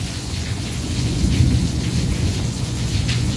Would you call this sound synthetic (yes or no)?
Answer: yes